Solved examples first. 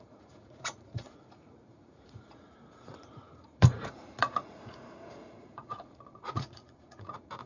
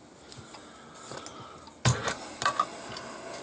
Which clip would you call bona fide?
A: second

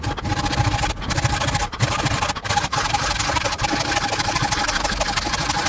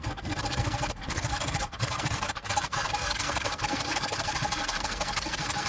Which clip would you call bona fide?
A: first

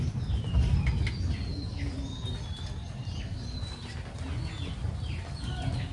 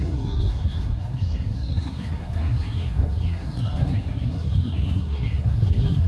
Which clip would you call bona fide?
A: first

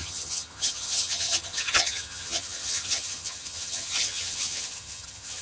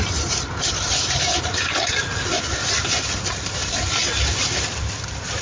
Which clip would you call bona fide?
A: second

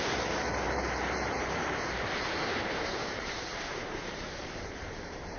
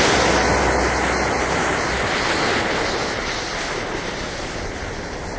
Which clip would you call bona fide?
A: second